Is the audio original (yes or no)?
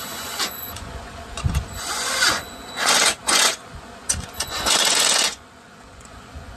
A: no